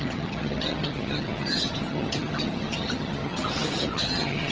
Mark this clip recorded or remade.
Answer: remade